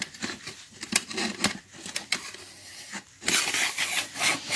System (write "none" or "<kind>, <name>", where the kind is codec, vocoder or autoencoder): none